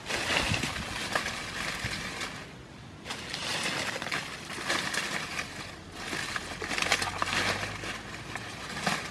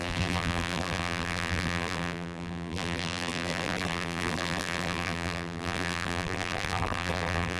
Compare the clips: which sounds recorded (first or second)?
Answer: first